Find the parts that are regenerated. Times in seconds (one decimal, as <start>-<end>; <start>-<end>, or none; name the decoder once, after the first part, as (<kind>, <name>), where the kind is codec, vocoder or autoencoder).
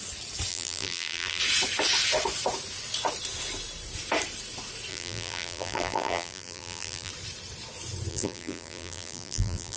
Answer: 0.5-1.4 (vocoder, BigVGAN v2); 4.9-7.1; 8.1-9.8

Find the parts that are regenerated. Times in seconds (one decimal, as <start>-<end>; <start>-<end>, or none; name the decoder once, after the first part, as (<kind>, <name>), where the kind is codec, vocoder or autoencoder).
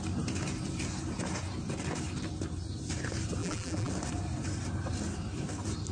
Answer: 3.4-3.9 (vocoder, BigVGAN v2)